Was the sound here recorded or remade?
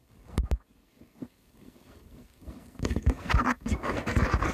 remade